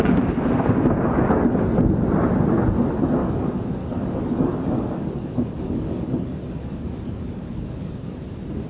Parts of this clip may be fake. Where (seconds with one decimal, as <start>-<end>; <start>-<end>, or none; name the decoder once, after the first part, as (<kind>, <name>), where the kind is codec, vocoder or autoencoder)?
3.2-8.2 (codec, DAC)